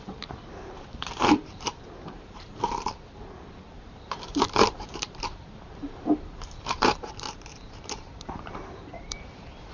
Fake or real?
fake